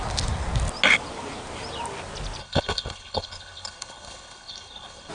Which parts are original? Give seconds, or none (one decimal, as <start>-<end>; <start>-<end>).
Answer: 0.0-2.4